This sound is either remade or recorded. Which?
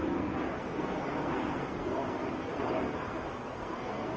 remade